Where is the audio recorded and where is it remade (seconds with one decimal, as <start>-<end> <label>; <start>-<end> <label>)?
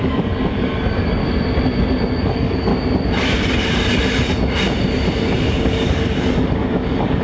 0.0-1.2 remade; 1.2-2.2 recorded; 2.2-2.7 remade; 2.7-5.5 recorded; 5.5-7.2 remade